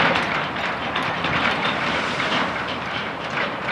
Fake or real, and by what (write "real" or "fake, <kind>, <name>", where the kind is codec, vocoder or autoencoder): fake, vocoder, BigVGAN v2